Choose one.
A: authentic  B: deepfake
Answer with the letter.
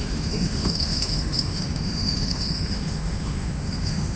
B